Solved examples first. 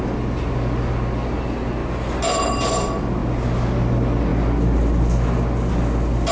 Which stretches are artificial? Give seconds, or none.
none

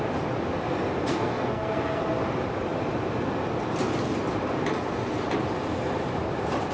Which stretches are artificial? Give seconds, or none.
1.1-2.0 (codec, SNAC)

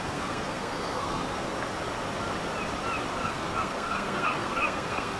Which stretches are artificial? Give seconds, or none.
0.0-1.5 (codec, SNAC); 3.2-5.2